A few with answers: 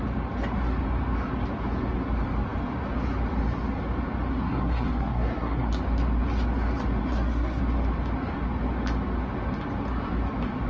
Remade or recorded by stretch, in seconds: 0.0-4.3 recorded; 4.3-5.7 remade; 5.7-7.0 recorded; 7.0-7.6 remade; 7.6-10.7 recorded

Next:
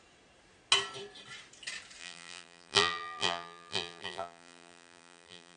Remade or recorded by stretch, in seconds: 0.0-2.0 recorded; 2.0-5.6 remade

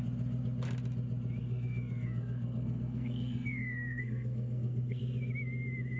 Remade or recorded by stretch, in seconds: 0.0-1.4 recorded; 1.4-5.0 remade; 5.0-6.0 recorded

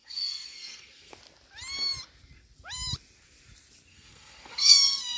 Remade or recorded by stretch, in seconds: 0.0-1.1 remade; 1.1-3.9 recorded; 3.9-5.2 remade

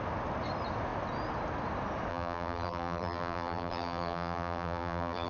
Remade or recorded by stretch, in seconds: 0.0-2.1 recorded; 2.1-5.3 remade